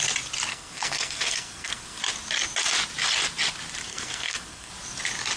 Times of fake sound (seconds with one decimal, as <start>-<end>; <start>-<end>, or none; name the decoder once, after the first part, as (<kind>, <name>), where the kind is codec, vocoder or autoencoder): 0.5-2.0 (codec, SNAC); 3.9-4.7